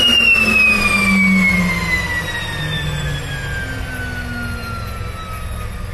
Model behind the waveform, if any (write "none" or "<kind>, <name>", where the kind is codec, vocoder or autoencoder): none